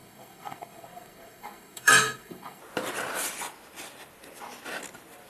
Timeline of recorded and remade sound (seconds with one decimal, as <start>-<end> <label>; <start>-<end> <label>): 0.0-2.6 remade; 2.6-5.3 recorded

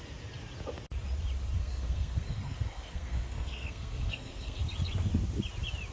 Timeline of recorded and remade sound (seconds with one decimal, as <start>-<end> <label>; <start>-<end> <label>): 0.0-1.6 recorded; 1.6-4.6 remade; 4.6-5.9 recorded